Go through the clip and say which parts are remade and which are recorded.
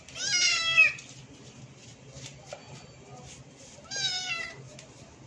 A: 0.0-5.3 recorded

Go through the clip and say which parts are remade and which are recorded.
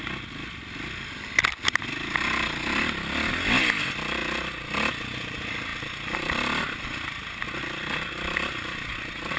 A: 0.0-9.4 recorded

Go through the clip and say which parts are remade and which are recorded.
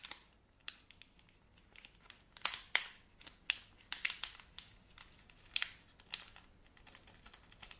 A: 0.0-7.8 recorded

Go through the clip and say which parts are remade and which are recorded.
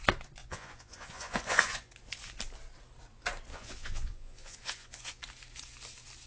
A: 0.0-0.4 recorded; 0.4-1.9 remade; 1.9-3.5 recorded; 3.5-5.2 remade; 5.2-6.3 recorded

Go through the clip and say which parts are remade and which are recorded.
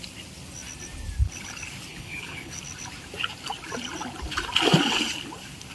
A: 0.0-1.9 recorded; 1.9-2.6 remade; 2.6-5.7 recorded